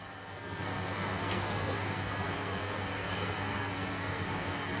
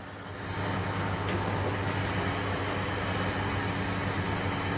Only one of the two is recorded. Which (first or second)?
second